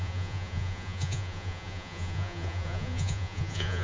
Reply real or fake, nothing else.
fake